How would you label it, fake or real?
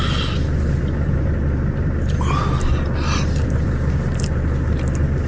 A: real